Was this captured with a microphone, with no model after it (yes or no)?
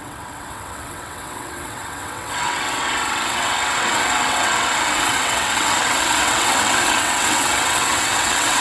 no